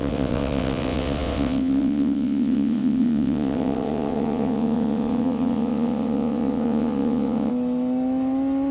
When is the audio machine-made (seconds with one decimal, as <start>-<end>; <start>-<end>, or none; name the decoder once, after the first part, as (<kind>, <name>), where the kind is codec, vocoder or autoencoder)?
0.0-7.5 (vocoder, WaveNeXt)